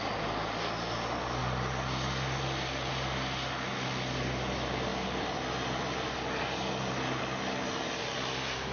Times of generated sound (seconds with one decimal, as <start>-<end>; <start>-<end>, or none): none